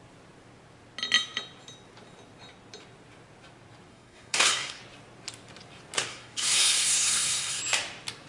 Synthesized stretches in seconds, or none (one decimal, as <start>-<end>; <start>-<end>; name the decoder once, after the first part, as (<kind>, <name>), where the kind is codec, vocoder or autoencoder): 3.9-4.8 (codec, SNAC); 6.1-7.6